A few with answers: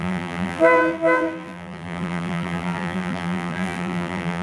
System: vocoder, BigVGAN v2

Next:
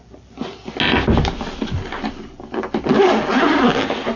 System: none